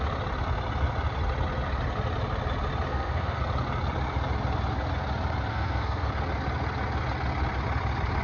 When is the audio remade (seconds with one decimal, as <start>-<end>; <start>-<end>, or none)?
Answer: 2.9-3.4; 5.5-6.1